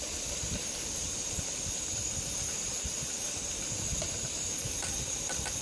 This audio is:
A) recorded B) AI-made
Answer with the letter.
A